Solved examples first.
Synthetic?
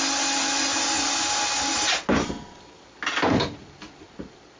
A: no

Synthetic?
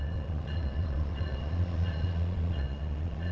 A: yes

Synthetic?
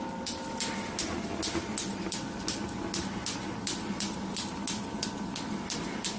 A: no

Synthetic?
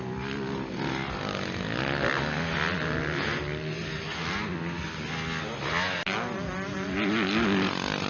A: no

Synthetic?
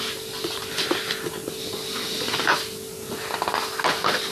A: no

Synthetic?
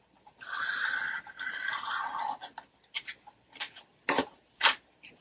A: yes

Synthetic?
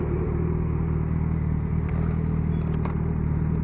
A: no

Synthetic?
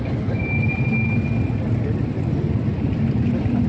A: no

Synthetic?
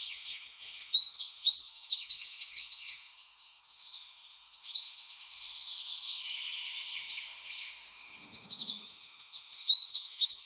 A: yes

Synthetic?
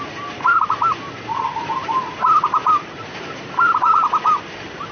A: no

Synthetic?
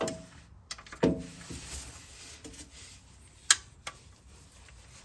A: no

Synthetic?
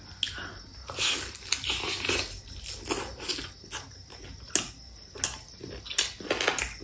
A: no